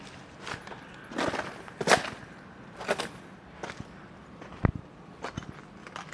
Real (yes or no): yes